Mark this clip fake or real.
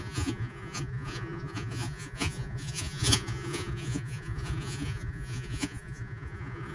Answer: fake